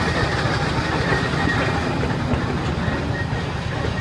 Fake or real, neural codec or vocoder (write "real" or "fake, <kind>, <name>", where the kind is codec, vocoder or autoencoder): real